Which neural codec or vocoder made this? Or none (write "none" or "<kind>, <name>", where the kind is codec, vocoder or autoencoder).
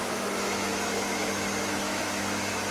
autoencoder, DAC-VAE